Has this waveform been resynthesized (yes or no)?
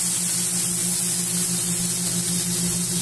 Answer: no